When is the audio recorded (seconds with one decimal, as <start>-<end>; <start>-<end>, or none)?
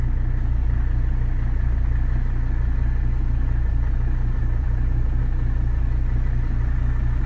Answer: 0.0-4.4; 5.2-7.3